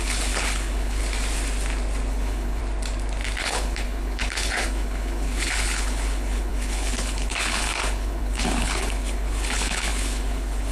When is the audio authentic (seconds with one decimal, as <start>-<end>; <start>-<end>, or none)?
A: 1.0-2.1; 2.6-3.4